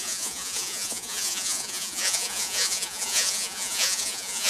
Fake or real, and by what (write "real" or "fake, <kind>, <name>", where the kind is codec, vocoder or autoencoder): fake, vocoder, Vocos